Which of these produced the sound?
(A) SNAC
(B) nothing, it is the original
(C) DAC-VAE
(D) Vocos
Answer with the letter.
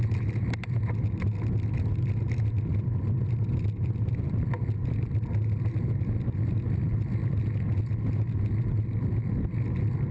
B